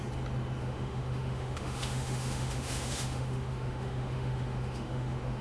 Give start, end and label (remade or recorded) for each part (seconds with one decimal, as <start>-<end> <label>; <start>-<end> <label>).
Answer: 0.0-0.6 recorded; 0.6-5.4 remade